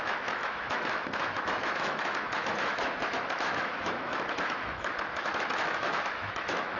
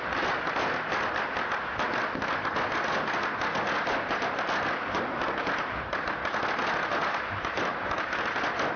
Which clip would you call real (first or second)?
second